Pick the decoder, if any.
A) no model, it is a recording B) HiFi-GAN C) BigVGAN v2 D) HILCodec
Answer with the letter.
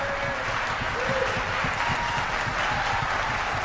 A